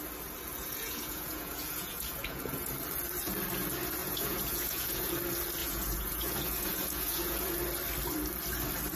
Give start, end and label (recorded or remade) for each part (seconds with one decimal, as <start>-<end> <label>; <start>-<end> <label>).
0.0-0.6 recorded; 0.6-2.7 remade; 2.7-4.0 recorded; 4.0-5.1 remade; 5.1-5.6 recorded; 5.6-7.5 remade; 7.5-8.9 recorded